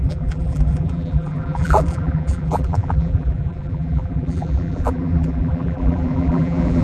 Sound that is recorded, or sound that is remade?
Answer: remade